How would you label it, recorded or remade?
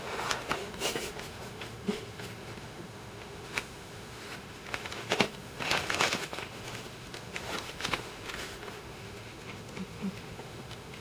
remade